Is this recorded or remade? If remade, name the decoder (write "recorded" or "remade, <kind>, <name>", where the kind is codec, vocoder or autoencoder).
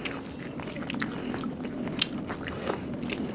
recorded